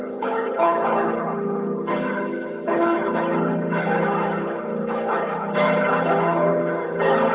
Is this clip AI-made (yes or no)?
yes